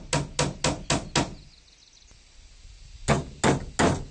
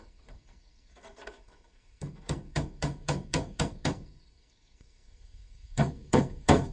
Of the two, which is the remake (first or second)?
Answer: second